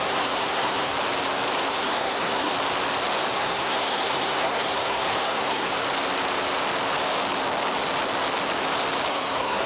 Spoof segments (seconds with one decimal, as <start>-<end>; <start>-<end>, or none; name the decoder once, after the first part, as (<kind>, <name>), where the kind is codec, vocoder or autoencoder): 0.0-0.9 (codec, SNAC); 1.7-2.5; 3.3-5.7; 9.1-9.7